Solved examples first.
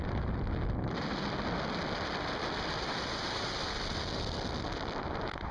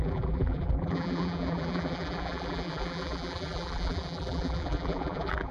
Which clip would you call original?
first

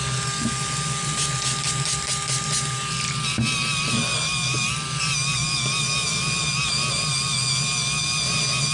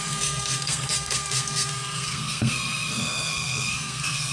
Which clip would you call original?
first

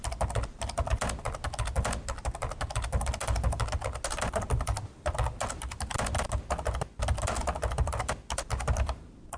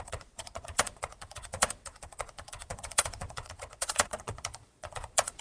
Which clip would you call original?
first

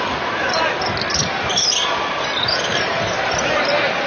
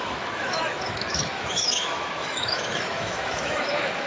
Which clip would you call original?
first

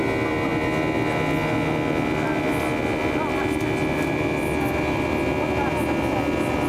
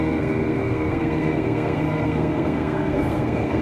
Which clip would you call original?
first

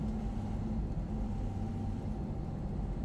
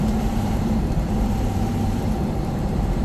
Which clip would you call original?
first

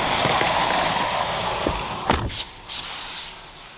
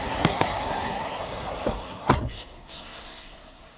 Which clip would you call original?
first